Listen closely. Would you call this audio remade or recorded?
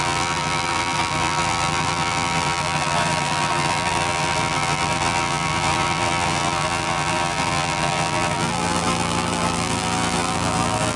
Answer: remade